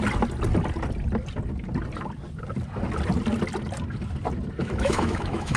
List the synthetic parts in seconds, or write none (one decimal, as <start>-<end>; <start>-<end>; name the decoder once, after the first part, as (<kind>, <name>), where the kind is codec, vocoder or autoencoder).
4.6-5.6 (autoencoder, DAC-VAE)

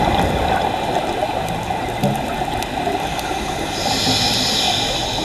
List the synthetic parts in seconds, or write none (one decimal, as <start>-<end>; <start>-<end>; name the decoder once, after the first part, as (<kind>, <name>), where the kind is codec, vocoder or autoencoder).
none